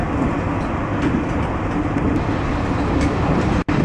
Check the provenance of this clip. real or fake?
real